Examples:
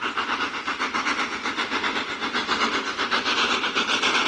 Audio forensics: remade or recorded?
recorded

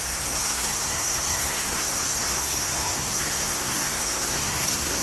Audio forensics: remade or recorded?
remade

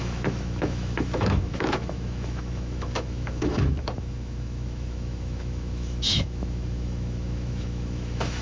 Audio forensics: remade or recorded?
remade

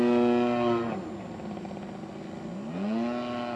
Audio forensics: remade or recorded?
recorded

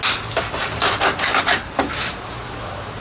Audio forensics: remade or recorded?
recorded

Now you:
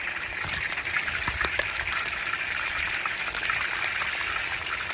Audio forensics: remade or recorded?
recorded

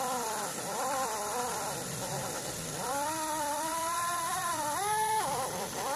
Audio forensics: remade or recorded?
remade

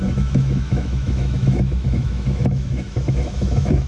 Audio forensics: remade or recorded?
remade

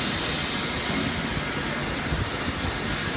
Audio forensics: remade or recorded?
recorded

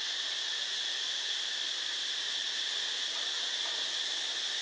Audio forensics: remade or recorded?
recorded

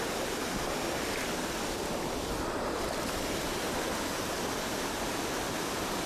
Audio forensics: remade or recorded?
recorded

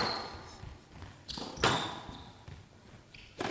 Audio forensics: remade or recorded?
recorded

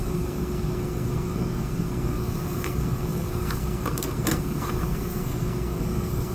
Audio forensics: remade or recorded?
remade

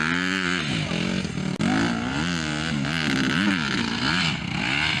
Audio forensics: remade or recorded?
recorded